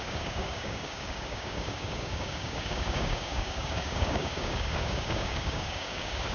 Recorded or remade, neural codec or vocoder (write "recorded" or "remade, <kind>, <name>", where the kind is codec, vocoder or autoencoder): remade, codec, DAC